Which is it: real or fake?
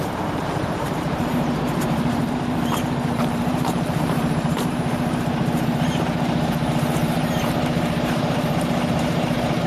fake